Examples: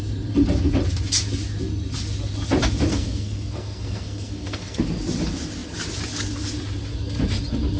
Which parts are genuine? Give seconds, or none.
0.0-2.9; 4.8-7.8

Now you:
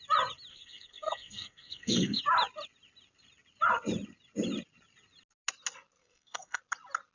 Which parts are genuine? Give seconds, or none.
0.0-0.5; 2.2-6.0; 6.6-7.1

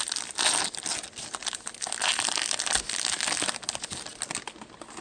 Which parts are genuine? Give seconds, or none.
0.0-5.0